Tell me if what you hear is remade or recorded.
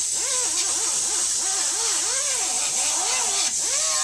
recorded